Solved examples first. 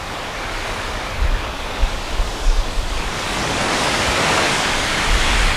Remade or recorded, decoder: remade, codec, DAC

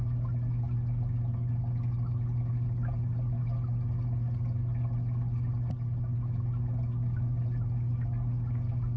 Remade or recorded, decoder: recorded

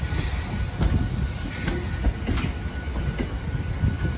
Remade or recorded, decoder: recorded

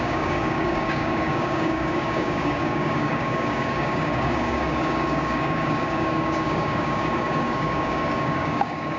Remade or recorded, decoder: remade, codec, DAC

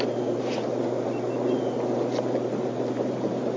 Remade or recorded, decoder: recorded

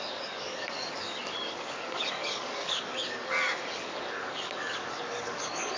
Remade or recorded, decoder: remade, codec, DAC